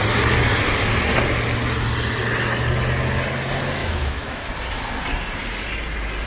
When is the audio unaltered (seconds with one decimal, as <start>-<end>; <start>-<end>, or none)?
0.0-3.8; 4.5-6.3